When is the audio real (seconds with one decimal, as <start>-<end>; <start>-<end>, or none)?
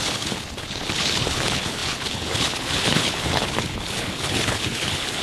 none